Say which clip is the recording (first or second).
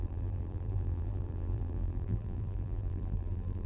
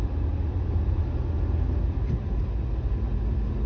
second